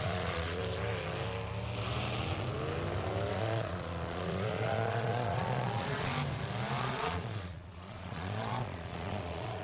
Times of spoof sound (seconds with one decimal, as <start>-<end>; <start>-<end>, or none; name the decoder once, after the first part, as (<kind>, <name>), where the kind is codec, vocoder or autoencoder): 0.0-0.6 (vocoder, Vocos); 3.3-6.1; 6.8-9.6